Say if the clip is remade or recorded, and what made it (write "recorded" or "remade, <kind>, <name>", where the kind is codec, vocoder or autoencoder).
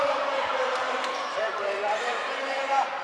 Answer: remade, vocoder, BigVGAN v2